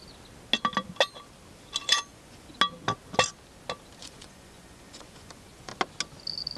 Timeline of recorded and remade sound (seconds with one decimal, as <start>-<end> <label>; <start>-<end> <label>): 0.0-1.8 recorded; 1.8-2.5 remade; 2.5-4.0 recorded; 4.0-5.7 remade; 5.7-6.6 recorded